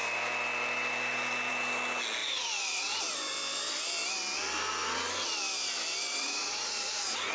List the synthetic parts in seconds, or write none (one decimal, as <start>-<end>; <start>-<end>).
2.2-3.0; 6.1-7.3